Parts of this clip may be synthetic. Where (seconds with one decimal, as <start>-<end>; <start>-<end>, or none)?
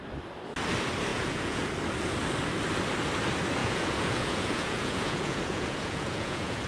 1.1-1.7; 3.6-6.7